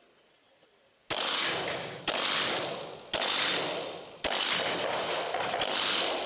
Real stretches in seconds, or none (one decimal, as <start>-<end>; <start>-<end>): 0.0-1.0; 2.0-6.3